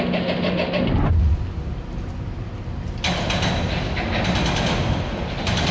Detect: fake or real real